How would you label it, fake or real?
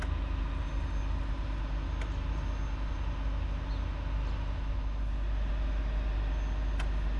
real